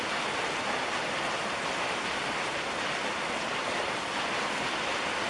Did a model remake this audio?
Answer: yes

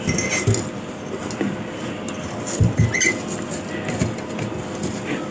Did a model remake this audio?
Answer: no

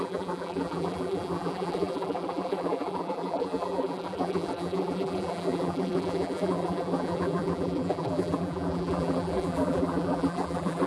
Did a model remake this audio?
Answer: yes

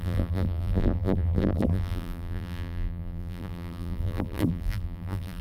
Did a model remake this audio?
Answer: yes